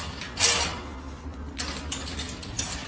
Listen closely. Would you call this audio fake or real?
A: real